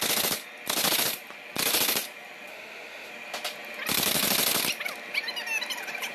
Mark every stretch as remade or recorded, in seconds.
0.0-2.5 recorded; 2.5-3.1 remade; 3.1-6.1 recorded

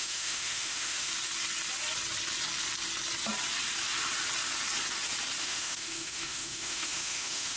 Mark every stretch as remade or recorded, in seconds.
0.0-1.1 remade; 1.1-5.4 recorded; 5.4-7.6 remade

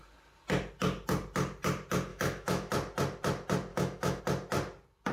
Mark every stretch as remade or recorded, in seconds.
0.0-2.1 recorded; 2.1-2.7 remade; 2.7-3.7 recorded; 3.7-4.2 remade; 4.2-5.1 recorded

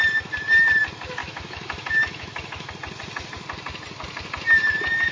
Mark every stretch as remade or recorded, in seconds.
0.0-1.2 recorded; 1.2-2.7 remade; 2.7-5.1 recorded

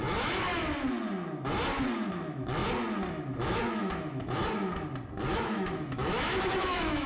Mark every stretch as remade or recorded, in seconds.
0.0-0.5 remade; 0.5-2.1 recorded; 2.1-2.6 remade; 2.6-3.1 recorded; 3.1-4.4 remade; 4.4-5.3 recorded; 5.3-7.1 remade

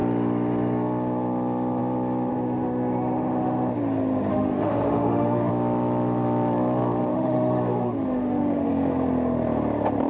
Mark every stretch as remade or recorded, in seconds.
0.0-2.3 recorded; 2.3-3.7 remade; 3.7-4.3 recorded; 4.3-5.5 remade; 5.5-7.1 recorded; 7.1-8.7 remade; 8.7-10.1 recorded

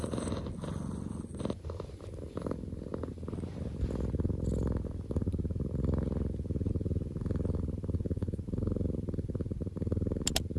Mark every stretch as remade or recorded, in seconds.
0.0-10.6 recorded

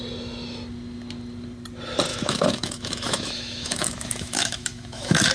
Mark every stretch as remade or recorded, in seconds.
0.0-2.1 recorded; 2.1-5.3 remade